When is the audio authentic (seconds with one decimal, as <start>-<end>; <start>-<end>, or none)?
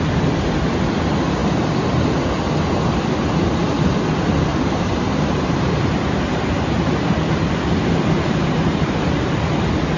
0.0-4.5; 9.4-10.0